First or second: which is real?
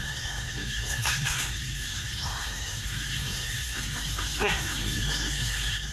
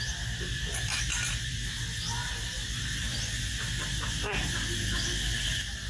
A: second